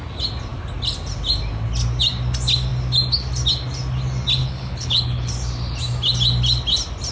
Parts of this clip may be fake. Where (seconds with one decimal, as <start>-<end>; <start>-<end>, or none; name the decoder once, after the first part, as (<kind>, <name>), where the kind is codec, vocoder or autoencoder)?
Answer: 4.4-5.3 (codec, HILCodec)